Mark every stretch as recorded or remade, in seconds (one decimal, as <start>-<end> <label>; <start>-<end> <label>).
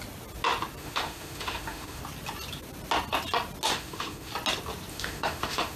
0.0-0.8 recorded; 0.8-2.0 remade; 2.0-3.7 recorded; 3.7-4.3 remade; 4.3-4.9 recorded; 4.9-5.8 remade